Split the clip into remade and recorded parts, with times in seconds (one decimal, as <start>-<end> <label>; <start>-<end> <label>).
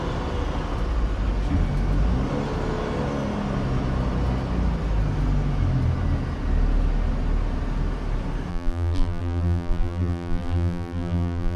0.0-8.5 recorded; 8.5-11.6 remade